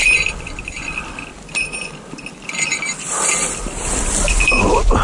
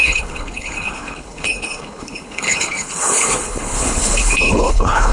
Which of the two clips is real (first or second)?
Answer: first